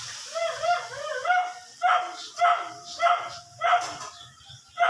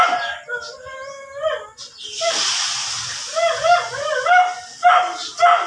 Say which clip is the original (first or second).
second